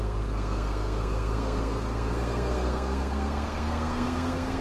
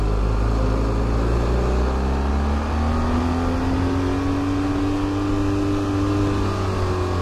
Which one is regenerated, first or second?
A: first